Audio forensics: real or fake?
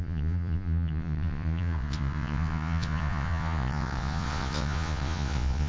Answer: fake